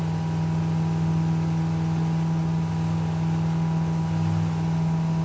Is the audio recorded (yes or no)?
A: yes